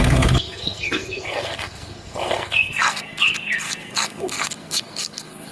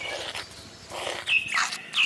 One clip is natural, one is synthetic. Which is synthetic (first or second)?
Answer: first